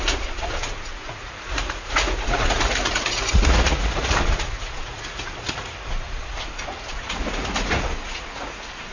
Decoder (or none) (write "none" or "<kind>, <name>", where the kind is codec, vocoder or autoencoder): vocoder, Vocos